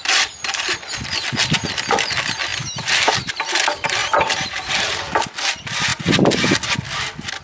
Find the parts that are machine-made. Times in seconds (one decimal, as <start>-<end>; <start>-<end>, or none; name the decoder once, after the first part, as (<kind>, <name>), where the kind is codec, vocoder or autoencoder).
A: 4.0-5.0 (vocoder, BigVGAN v2)